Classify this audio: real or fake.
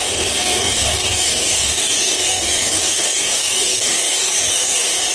fake